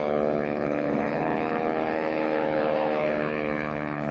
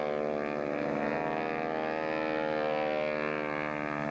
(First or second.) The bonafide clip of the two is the second